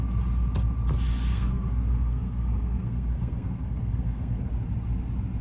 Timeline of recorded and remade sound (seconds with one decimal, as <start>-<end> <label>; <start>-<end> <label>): 0.0-1.3 recorded; 1.3-4.5 remade; 4.5-5.4 recorded